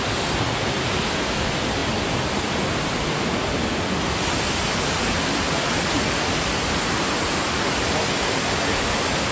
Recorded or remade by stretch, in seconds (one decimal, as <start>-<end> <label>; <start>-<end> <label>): 0.0-9.3 recorded